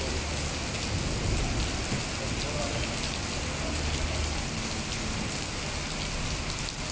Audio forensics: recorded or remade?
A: recorded